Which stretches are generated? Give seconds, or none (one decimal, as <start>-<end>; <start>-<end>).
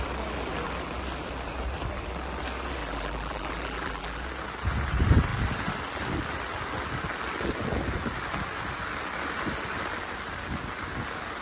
2.8-4.2